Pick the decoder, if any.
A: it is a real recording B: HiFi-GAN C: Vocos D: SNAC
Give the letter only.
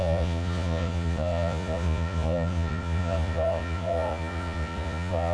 C